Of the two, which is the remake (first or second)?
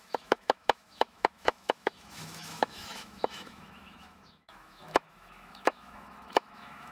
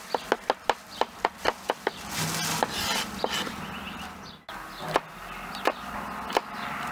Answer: first